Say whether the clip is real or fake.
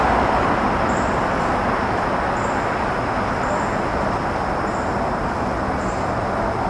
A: real